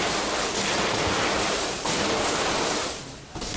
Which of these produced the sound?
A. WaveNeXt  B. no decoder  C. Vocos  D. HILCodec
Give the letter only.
B